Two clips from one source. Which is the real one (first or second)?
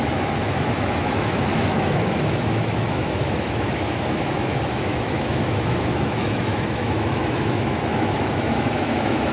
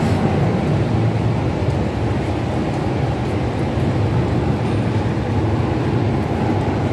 second